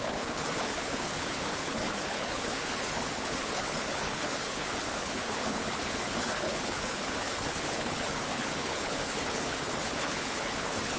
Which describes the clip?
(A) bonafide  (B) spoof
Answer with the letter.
B